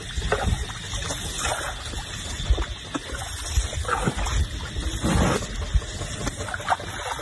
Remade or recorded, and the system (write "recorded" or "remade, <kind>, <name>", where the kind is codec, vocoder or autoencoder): recorded